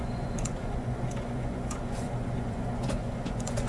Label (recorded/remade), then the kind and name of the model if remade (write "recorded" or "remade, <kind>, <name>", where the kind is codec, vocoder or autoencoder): remade, vocoder, Vocos